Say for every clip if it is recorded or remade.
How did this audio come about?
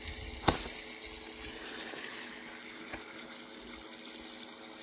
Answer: recorded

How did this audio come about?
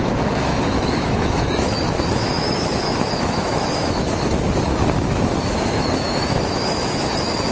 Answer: remade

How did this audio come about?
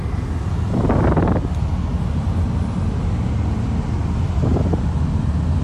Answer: recorded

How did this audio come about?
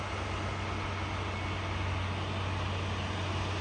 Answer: recorded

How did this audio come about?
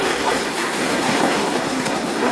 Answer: remade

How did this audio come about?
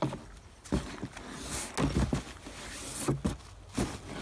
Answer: recorded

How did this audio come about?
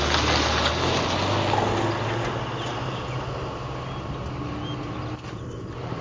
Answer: recorded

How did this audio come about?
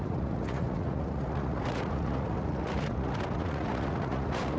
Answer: remade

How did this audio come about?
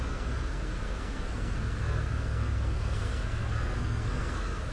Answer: remade